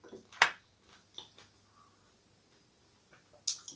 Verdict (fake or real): real